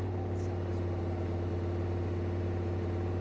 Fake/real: real